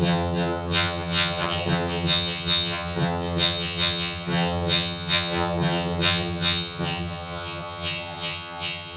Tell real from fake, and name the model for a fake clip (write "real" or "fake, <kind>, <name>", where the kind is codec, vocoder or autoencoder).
fake, vocoder, HiFi-GAN